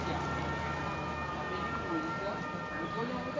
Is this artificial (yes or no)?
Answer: no